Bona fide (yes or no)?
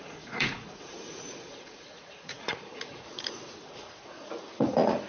no